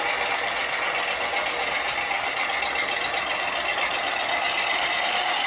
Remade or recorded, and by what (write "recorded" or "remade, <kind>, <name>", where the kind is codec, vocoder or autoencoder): recorded